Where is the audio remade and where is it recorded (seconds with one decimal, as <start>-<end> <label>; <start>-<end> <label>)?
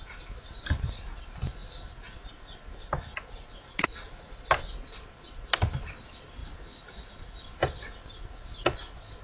0.0-9.2 recorded